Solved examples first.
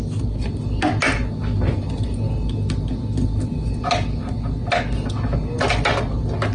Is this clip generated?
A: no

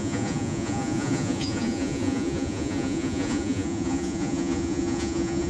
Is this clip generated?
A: yes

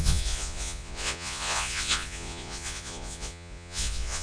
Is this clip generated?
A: yes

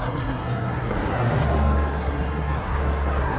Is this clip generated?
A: yes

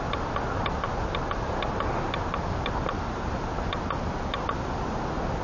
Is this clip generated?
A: no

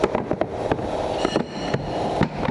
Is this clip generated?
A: no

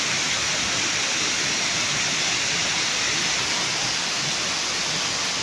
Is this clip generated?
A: no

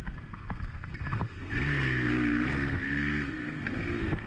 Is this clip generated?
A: yes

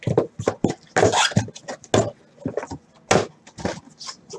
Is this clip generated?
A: no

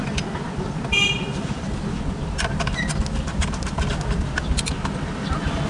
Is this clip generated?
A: no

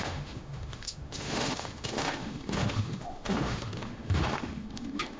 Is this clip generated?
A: yes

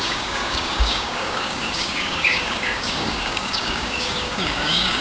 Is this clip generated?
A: yes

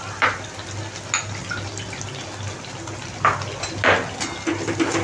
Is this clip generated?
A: no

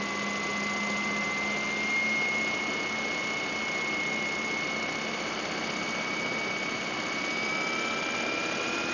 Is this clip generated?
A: no